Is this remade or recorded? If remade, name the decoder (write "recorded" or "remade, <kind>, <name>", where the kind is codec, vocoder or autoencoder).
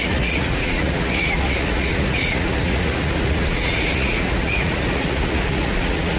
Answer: remade, vocoder, Vocos